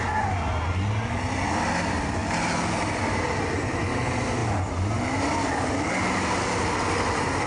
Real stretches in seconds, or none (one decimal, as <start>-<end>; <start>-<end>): 0.0-7.5